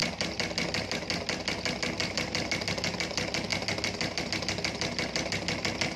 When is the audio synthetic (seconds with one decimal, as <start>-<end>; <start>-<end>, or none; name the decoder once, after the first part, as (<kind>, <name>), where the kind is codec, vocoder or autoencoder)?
none